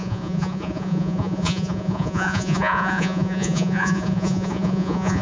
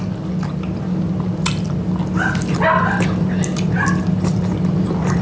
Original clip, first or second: second